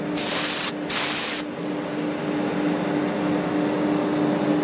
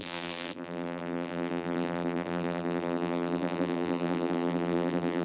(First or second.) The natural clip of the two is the first